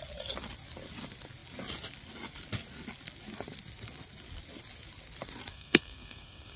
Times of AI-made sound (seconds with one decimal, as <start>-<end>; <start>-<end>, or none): 5.5-6.6